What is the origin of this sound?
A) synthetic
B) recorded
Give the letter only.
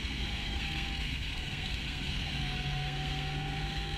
A